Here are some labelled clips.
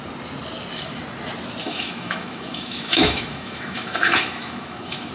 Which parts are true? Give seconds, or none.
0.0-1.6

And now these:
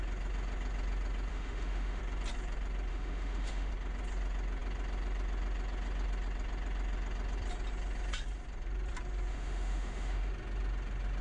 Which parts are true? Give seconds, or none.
0.0-1.3; 2.0-2.9; 3.7-9.3; 10.3-11.2

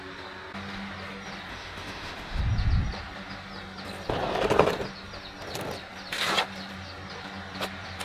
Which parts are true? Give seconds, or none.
0.0-1.5; 2.4-8.0